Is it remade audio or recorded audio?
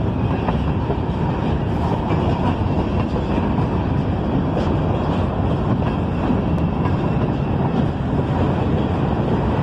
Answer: recorded